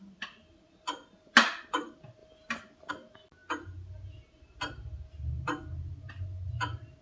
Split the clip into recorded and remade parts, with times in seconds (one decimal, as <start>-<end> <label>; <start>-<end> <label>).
0.0-7.0 recorded